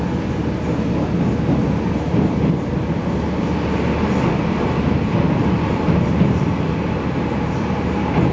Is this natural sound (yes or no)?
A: yes